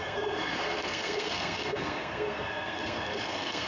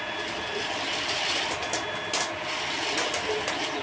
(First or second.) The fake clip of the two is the first